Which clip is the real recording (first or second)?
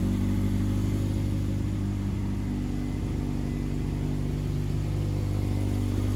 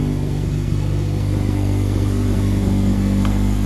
first